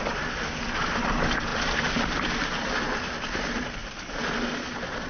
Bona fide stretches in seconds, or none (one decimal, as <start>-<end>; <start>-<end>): 0.0-5.1